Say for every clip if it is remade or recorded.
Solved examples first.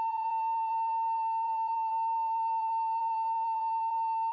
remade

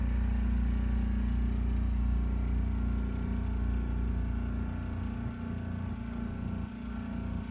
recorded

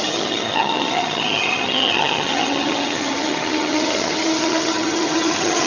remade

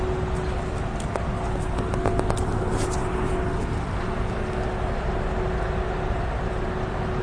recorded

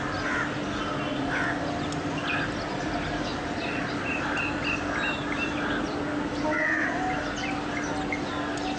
recorded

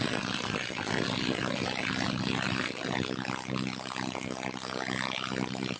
recorded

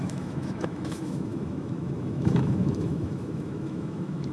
remade